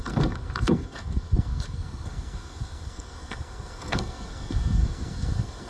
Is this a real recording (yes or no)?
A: no